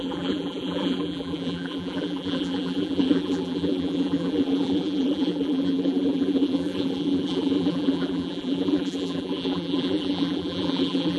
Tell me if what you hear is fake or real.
fake